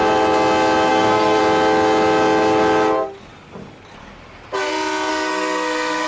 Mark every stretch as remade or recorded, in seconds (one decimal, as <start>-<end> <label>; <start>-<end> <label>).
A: 0.0-0.9 recorded; 0.9-1.4 remade; 1.4-5.1 recorded; 5.1-6.1 remade